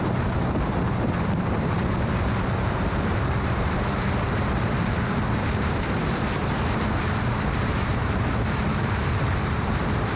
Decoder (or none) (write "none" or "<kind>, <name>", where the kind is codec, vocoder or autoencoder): vocoder, BigVGAN v2